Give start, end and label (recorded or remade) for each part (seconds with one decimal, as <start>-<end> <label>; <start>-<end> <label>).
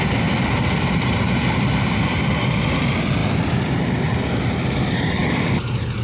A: 0.0-6.0 recorded